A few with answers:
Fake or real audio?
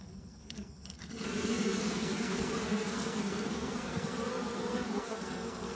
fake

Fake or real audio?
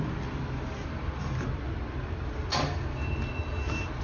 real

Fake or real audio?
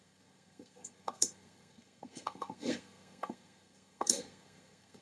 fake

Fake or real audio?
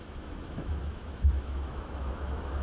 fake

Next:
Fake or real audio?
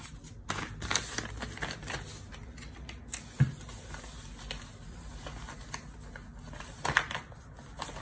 real